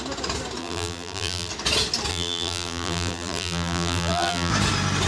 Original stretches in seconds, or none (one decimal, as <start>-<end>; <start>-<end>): 0.0-0.6; 1.5-2.1; 4.5-5.1